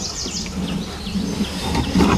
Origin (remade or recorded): recorded